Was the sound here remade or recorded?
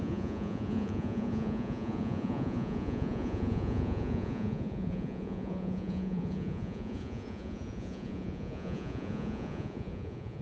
remade